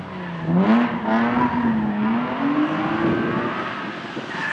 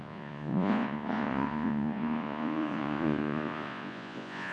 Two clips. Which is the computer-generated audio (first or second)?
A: second